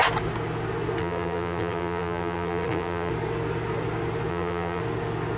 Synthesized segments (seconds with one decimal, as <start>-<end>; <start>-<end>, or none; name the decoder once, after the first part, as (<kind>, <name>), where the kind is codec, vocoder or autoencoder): 1.0-3.1 (vocoder, BigVGAN v2); 4.3-4.8

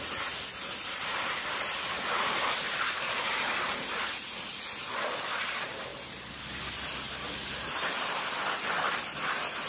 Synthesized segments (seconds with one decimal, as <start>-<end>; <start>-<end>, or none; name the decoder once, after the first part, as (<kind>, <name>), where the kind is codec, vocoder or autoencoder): 0.8-4.0 (vocoder, BigVGAN v2); 7.2-7.9

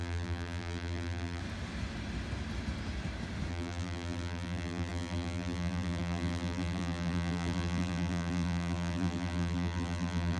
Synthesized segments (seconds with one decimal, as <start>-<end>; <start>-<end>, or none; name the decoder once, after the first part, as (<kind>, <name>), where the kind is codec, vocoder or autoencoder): 0.0-1.4 (vocoder, BigVGAN v2); 3.5-10.4